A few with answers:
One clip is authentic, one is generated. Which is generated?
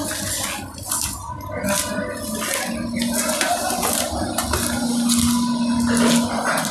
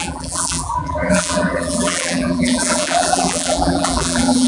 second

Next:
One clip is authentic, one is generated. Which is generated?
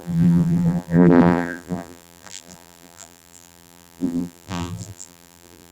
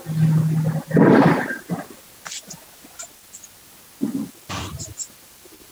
first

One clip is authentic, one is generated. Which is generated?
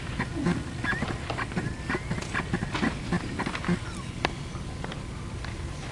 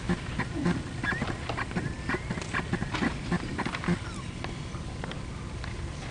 second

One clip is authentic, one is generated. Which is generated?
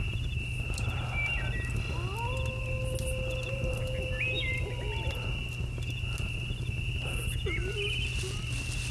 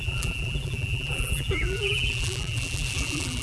second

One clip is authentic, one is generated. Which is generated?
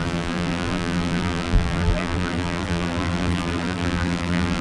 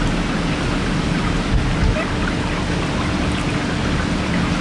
first